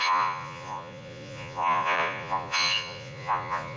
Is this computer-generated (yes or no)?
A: yes